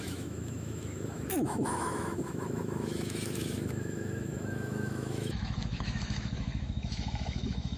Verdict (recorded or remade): remade